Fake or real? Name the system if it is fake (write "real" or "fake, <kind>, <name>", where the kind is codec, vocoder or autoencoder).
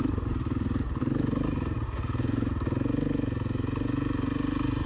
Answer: real